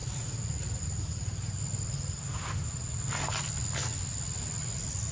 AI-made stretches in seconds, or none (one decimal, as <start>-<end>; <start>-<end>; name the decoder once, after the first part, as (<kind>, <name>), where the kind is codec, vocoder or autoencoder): 2.2-2.7 (autoencoder, DAC-VAE)